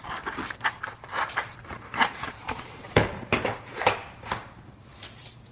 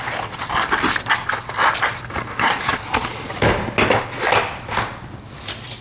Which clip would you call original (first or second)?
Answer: second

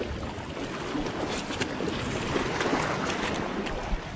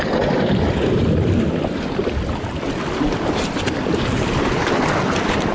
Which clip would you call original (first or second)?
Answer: first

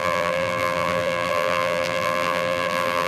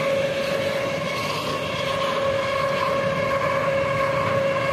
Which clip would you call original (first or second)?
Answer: second